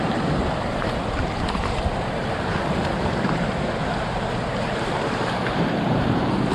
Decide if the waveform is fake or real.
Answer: fake